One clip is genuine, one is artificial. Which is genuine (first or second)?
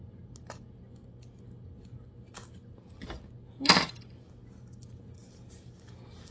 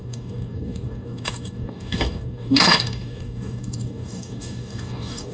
first